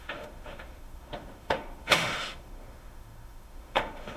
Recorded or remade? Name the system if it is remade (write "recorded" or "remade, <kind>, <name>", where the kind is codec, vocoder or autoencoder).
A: remade, autoencoder, DAC-VAE